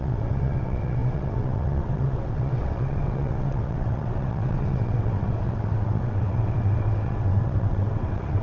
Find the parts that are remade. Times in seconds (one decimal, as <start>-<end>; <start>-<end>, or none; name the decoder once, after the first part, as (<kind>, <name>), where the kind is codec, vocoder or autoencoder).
0.0-8.4 (vocoder, WaveNeXt)